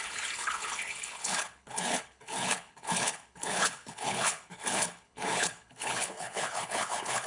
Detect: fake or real fake